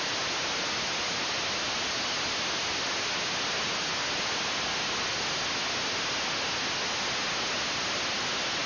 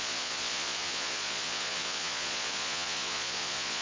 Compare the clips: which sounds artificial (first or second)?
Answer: second